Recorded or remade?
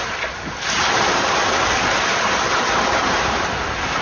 recorded